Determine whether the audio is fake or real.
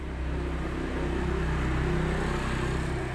real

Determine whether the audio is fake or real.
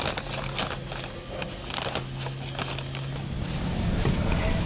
real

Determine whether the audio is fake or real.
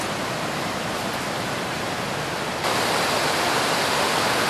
real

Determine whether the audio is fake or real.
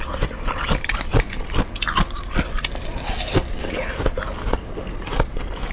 real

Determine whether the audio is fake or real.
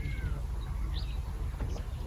real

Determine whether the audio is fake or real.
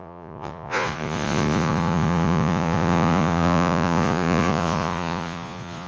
fake